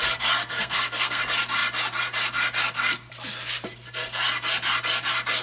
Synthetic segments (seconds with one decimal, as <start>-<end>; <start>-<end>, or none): 0.4-1.2